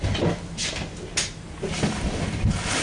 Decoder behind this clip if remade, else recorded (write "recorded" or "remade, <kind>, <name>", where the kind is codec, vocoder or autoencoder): recorded